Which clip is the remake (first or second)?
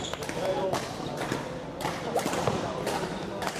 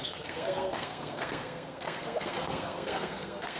second